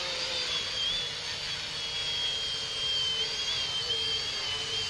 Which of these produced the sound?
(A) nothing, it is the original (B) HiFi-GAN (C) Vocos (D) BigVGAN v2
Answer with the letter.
A